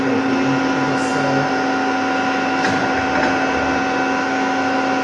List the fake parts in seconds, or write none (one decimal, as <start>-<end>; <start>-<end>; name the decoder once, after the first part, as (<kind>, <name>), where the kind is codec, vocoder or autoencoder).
none